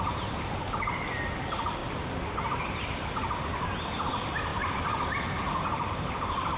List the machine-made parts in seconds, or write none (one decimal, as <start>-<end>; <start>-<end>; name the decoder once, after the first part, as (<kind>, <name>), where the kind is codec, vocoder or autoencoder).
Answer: none